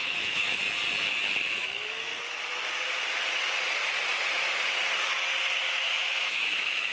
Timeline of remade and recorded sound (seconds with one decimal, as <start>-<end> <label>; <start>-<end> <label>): 0.0-0.6 remade; 0.6-1.5 recorded; 1.5-2.1 remade; 2.1-5.7 recorded; 5.7-6.9 remade